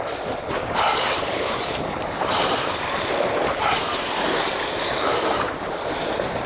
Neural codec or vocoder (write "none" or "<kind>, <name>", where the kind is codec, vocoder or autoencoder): vocoder, BigVGAN v2